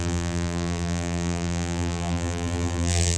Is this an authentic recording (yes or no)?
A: no